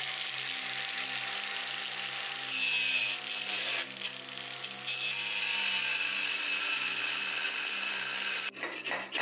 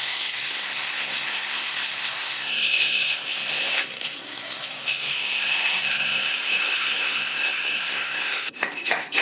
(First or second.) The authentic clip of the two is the first